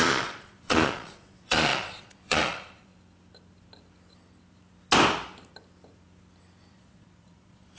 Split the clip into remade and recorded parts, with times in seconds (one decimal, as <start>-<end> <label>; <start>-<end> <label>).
0.0-2.9 remade; 2.9-6.7 recorded; 6.7-7.8 remade